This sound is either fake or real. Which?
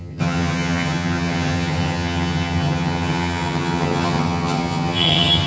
fake